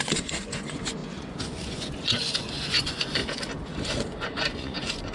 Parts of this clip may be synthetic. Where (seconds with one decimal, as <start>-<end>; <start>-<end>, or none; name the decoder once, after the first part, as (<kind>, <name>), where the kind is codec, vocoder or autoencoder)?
0.0-3.2 (vocoder, Vocos); 3.8-5.1